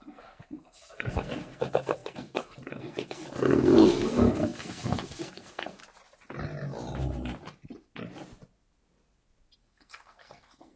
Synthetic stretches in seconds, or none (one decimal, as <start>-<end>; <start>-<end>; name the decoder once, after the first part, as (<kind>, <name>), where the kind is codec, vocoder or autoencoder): 0.0-5.8 (codec, SNAC); 9.6-10.8